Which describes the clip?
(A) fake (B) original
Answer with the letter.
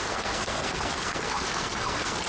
A